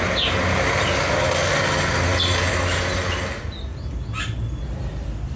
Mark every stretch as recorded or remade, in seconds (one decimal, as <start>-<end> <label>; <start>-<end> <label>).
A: 0.0-5.4 recorded